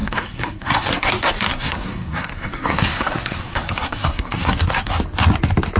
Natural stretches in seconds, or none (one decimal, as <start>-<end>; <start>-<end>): 1.1-1.5; 5.0-5.8